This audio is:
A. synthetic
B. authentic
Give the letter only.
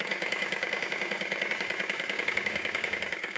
A